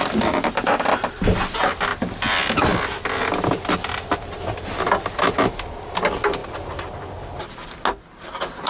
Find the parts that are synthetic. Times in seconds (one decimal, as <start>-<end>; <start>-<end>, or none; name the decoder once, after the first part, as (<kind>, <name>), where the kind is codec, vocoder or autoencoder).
none